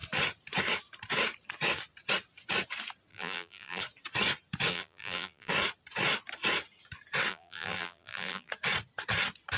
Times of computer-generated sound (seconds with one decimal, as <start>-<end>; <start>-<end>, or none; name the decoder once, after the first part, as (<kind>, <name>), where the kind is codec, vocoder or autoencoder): 3.1-3.8 (vocoder, BigVGAN v2); 4.7-5.5; 7.3-8.5